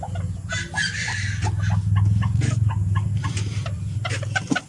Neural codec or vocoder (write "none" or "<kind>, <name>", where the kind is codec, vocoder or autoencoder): none